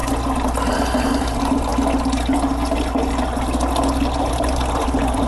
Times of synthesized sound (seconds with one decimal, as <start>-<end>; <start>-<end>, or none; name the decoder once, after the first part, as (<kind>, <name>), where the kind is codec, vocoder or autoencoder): 0.7-1.7 (vocoder, BigVGAN v2); 4.2-5.3